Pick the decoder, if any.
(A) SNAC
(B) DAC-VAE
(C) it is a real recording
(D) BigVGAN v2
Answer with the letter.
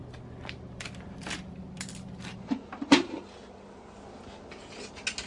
C